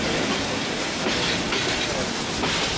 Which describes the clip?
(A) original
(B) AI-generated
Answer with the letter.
A